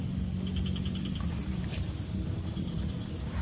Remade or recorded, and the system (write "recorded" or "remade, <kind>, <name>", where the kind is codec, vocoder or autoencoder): recorded